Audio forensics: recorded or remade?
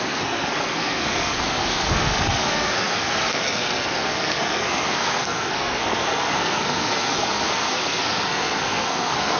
remade